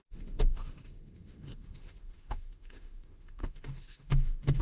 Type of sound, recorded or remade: remade